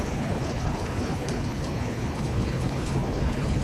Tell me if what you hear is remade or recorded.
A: remade